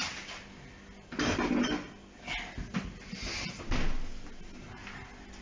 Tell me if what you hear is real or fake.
real